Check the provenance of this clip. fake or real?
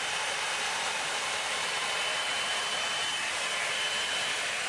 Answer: fake